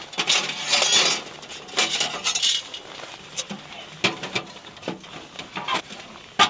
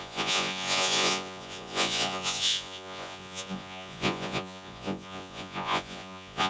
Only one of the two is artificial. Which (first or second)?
second